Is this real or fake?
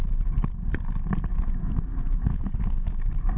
fake